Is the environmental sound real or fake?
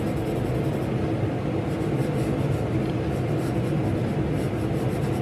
real